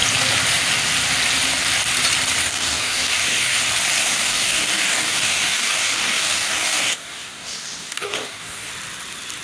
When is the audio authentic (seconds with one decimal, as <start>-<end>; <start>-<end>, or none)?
0.0-2.4; 3.6-4.0; 8.7-9.4